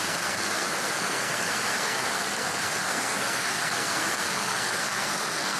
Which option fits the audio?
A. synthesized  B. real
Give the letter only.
A